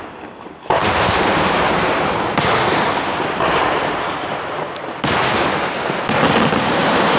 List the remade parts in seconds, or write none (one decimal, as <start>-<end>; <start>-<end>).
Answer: 0.8-2.2; 3.1-6.1